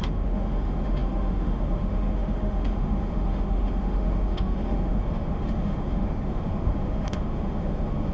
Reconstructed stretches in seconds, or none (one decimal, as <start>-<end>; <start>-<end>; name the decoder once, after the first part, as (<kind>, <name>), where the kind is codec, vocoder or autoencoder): 0.0-8.1 (autoencoder, DAC-VAE)